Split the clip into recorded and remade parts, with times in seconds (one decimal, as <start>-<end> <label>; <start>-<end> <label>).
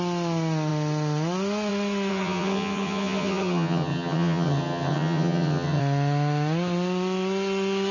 0.0-2.1 recorded; 2.1-5.8 remade; 5.8-7.9 recorded